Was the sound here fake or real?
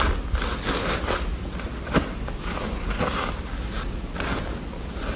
real